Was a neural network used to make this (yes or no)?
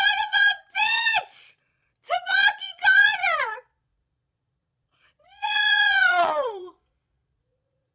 yes